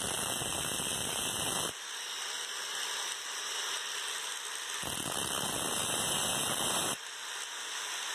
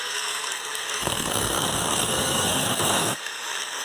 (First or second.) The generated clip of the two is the second